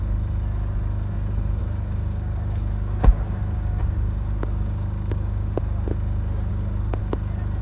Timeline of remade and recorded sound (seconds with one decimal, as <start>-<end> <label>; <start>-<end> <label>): 0.0-1.6 recorded; 1.6-5.6 remade; 5.6-6.5 recorded; 6.5-7.0 remade; 7.0-7.6 recorded